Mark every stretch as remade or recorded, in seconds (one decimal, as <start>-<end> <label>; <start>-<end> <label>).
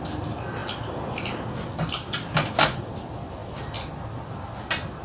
0.0-5.0 recorded